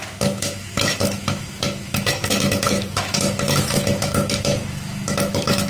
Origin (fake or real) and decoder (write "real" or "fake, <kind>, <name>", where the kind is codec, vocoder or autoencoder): fake, autoencoder, DAC-VAE